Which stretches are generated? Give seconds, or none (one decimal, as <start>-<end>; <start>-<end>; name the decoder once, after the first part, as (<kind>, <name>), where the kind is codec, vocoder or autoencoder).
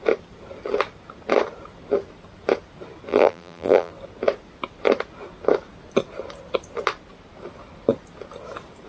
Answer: 3.1-3.9 (vocoder, BigVGAN v2)